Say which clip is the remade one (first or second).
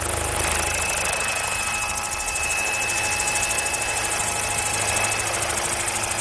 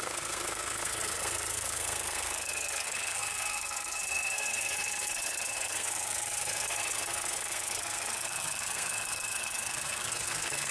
second